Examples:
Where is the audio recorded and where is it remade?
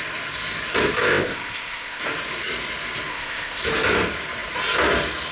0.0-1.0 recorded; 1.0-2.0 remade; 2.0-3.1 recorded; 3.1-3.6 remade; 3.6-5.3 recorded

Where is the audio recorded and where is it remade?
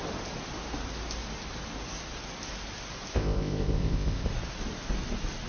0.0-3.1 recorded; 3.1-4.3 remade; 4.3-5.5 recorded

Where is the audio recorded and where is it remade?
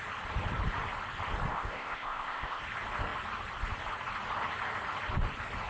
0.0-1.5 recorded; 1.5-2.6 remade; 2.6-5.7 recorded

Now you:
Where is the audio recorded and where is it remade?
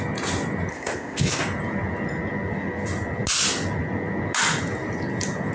0.0-0.7 recorded; 0.7-1.4 remade; 1.4-5.5 recorded